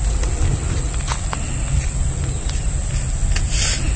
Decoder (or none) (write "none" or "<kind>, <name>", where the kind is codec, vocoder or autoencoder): none